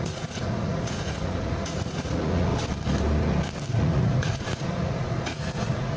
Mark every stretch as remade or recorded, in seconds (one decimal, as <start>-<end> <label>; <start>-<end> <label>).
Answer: 0.0-2.5 remade; 2.5-3.7 recorded; 3.7-6.0 remade